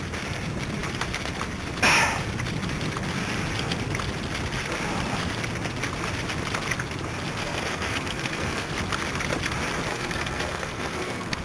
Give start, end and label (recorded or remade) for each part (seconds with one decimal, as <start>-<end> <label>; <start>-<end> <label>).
0.0-7.4 recorded; 7.4-8.7 remade; 8.7-9.9 recorded; 9.9-11.4 remade